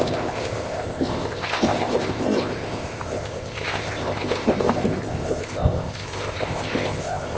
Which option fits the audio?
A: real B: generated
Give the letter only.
B